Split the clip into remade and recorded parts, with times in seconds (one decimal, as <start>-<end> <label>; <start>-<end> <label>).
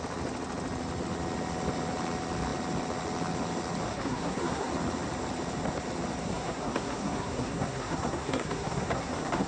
0.0-3.9 recorded; 3.9-4.7 remade; 4.7-6.2 recorded; 6.2-9.5 remade